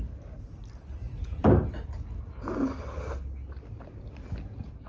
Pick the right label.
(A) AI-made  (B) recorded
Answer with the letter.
B